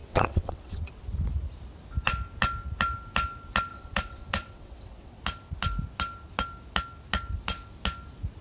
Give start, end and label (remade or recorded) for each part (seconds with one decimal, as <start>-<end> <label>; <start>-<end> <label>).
0.0-0.9 remade; 0.9-3.7 recorded; 3.7-5.2 remade; 5.2-8.4 recorded